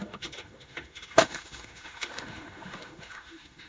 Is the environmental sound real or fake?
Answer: fake